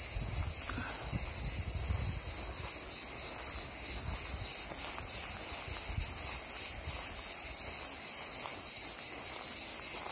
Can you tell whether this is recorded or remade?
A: recorded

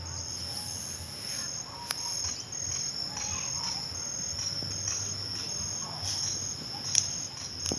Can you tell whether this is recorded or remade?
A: recorded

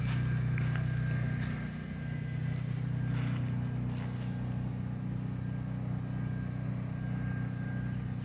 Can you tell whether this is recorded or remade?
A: recorded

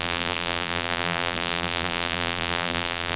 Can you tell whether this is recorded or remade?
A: remade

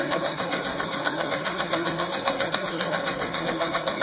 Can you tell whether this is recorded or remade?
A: remade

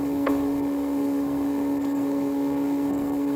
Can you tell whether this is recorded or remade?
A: remade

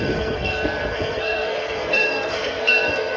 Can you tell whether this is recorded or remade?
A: remade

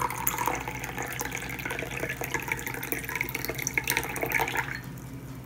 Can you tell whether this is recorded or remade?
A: recorded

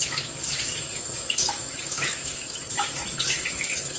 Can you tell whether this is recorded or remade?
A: remade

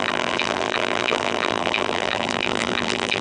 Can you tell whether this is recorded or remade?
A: remade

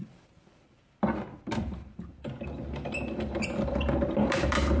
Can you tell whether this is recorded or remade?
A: remade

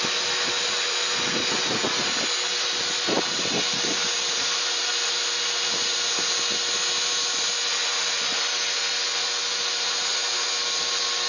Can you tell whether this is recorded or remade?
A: recorded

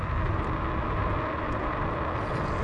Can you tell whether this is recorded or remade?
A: recorded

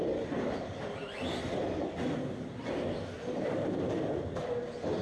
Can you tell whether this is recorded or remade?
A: recorded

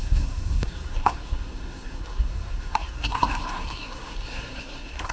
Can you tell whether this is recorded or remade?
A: remade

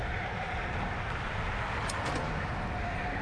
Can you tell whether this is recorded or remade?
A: recorded